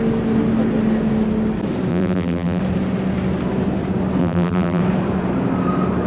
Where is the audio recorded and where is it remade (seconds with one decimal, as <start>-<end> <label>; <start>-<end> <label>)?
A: 0.0-1.9 recorded; 1.9-2.6 remade; 2.6-4.2 recorded; 4.2-4.8 remade; 4.8-6.1 recorded

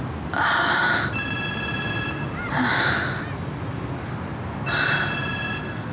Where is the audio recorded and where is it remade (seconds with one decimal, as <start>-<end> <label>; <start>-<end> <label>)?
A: 0.0-5.9 recorded

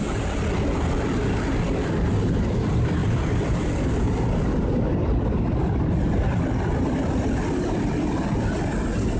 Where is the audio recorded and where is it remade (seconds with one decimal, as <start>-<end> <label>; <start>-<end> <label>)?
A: 0.0-3.0 recorded; 3.0-4.1 remade; 4.1-9.2 recorded